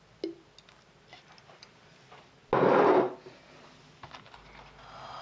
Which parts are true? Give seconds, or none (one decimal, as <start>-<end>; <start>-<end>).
0.0-5.2